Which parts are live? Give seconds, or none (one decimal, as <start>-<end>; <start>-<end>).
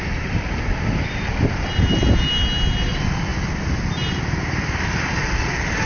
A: 0.0-5.9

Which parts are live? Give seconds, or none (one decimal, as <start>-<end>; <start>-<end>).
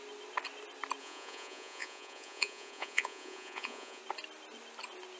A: 0.0-1.0; 4.0-5.2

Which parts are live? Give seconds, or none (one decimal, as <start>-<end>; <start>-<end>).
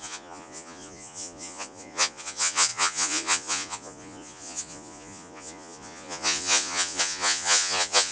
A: none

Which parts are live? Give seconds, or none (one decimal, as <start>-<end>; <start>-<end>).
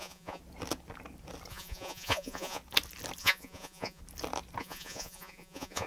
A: 0.4-1.5; 2.6-3.2; 4.0-4.6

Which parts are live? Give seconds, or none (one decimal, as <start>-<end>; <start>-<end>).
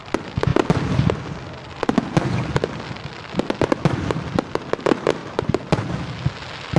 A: 0.0-6.8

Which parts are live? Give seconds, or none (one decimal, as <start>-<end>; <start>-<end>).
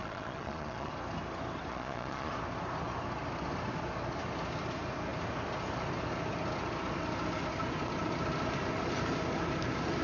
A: 0.9-1.7; 2.3-10.0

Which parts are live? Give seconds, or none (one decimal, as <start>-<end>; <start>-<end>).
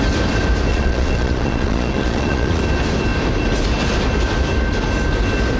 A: 0.0-0.7; 2.6-5.6